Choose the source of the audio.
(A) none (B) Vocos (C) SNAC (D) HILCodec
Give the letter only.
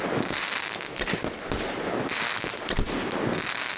A